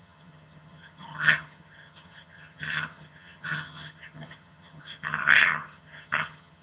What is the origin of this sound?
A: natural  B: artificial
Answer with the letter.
B